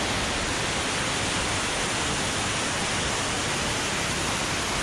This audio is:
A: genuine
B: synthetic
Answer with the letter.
A